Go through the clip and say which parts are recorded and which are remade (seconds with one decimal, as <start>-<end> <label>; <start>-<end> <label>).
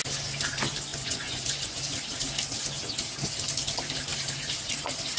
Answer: 0.0-0.9 recorded; 0.9-1.8 remade; 1.8-5.2 recorded